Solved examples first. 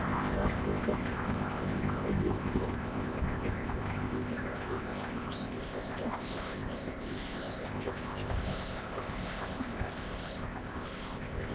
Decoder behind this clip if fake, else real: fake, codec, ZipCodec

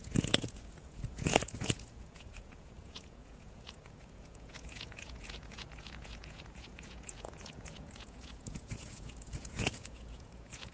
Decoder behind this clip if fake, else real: fake, vocoder, Vocos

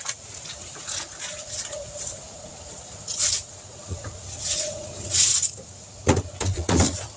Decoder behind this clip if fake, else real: fake, vocoder, Vocos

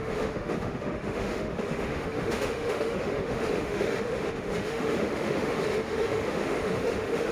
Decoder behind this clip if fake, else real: fake, autoencoder, DAC-VAE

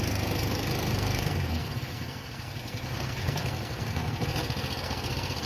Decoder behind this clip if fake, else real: fake, codec, SNAC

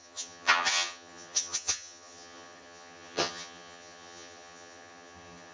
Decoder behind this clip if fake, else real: fake, vocoder, HiFi-GAN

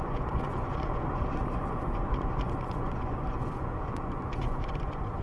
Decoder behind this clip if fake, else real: fake, vocoder, Vocos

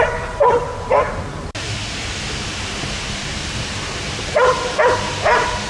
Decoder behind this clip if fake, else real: real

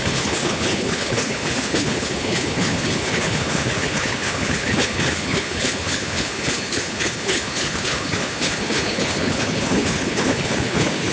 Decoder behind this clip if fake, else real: fake, codec, HILCodec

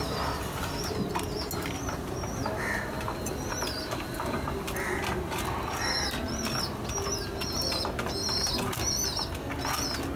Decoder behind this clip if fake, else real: real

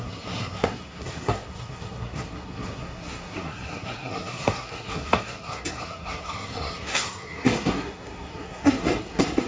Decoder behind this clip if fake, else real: fake, codec, SNAC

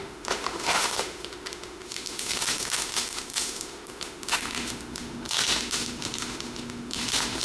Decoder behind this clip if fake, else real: fake, autoencoder, DAC-VAE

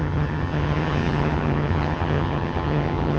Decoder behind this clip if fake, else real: fake, vocoder, HiFi-GAN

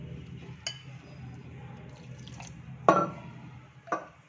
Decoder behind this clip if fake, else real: real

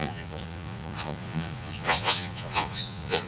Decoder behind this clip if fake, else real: fake, vocoder, Vocos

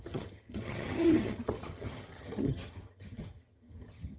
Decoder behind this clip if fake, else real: fake, vocoder, HiFi-GAN